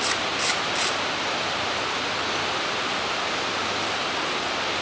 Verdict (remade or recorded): recorded